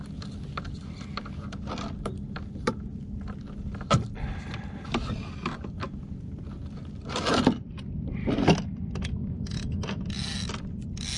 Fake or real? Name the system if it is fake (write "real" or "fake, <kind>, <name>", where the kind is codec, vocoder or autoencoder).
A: real